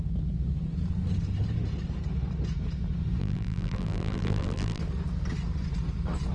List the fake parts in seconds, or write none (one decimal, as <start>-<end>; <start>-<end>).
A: 3.2-4.8